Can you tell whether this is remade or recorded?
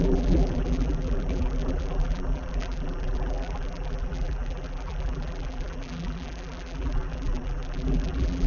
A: remade